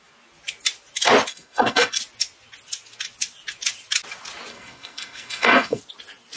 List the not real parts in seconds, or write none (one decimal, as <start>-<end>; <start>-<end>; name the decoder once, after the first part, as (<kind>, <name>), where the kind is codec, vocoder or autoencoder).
1.3-2.0 (codec, SNAC); 4.5-5.8